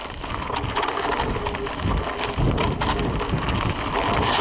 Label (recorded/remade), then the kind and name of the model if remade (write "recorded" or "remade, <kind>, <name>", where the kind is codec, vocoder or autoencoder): recorded